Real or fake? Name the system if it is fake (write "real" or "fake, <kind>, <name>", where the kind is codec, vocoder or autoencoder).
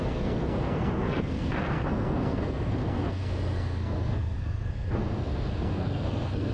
fake, codec, SNAC